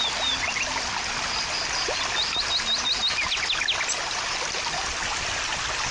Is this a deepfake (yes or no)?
no